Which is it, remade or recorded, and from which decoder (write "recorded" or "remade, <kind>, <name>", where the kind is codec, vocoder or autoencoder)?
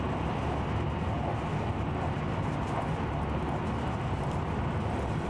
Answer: recorded